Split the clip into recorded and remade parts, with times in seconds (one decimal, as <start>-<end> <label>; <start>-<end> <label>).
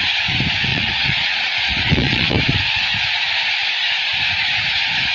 0.0-0.7 recorded; 0.7-2.4 remade; 2.4-5.1 recorded